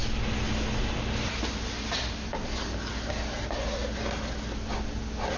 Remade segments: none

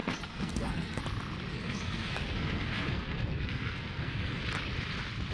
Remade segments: 0.0-1.0 (codec, SNAC); 1.5-4.4

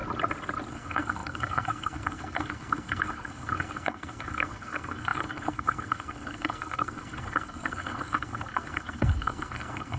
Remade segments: 0.7-10.0 (codec, SNAC)

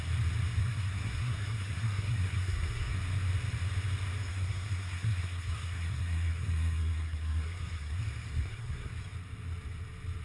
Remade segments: 0.6-3.0 (codec, SNAC); 4.3-8.0; 8.4-8.9

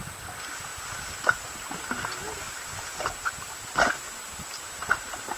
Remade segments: none